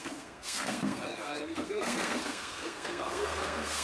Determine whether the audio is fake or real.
fake